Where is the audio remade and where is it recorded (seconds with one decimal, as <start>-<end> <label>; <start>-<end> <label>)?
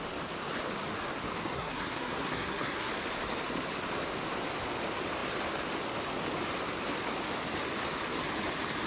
0.0-1.4 recorded; 1.4-2.9 remade; 2.9-8.9 recorded